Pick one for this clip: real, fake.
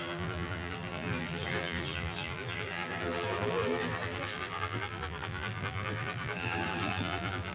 fake